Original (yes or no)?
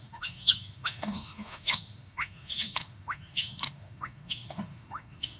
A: no